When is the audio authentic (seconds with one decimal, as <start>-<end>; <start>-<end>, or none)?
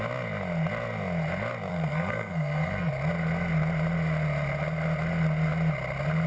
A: 0.0-1.7; 2.9-6.3